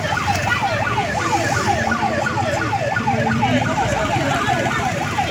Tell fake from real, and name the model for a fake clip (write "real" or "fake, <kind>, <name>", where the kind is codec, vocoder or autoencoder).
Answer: fake, vocoder, BigVGAN v2